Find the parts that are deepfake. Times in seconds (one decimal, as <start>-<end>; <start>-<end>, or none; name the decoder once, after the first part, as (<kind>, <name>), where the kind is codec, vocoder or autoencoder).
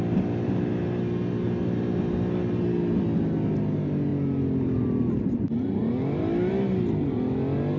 none